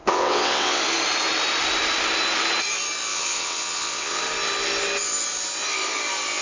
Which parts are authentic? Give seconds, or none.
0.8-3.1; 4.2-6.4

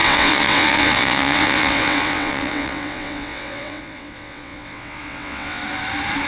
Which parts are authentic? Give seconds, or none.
5.6-6.3

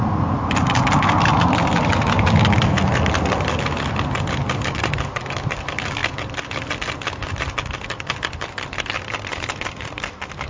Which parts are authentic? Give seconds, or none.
0.0-10.5

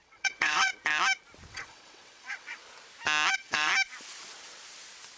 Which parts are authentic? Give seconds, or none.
0.7-1.5; 2.6-3.3; 3.7-5.2

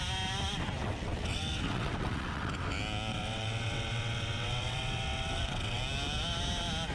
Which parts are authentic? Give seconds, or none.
0.0-0.8; 2.5-3.1; 5.8-6.9